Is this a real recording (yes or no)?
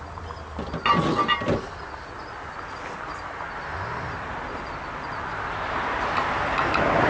yes